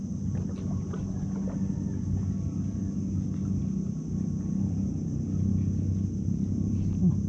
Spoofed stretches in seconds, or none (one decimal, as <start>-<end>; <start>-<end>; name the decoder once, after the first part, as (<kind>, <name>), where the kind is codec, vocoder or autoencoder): none